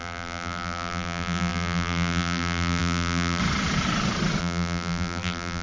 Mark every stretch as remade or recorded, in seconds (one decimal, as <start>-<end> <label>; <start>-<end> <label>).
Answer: 0.0-3.4 remade; 3.4-4.4 recorded; 4.4-5.6 remade